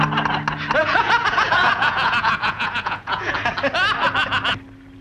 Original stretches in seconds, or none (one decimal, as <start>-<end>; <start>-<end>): 0.0-0.8; 3.3-5.0